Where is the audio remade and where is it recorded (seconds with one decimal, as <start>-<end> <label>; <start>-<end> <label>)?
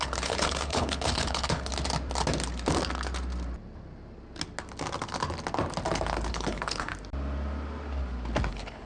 0.0-1.7 remade; 1.7-6.3 recorded; 6.3-6.9 remade; 6.9-8.5 recorded; 8.5-8.9 remade